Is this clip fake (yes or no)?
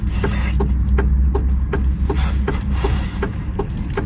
no